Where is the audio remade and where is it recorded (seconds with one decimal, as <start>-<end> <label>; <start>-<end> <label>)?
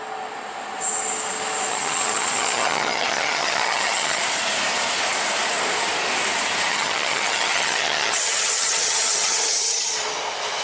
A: 0.0-1.7 recorded; 1.7-4.2 remade; 4.2-6.7 recorded; 6.7-9.9 remade; 9.9-10.6 recorded